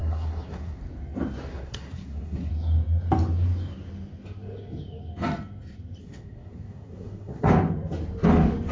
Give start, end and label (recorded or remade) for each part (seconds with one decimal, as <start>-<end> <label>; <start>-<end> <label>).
0.0-0.8 remade; 0.8-1.5 recorded; 1.5-2.5 remade; 2.5-6.0 recorded; 6.0-7.5 remade; 7.5-8.7 recorded